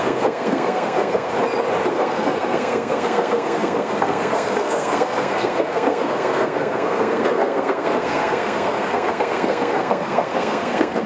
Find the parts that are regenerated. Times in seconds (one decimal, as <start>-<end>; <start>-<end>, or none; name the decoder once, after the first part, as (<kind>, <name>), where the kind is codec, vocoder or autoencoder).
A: 0.0-1.3 (codec, SNAC); 1.9-11.1